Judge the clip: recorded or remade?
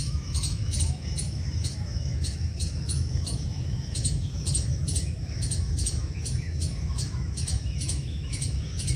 remade